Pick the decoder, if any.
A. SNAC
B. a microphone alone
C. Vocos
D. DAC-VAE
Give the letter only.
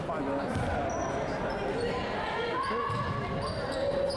B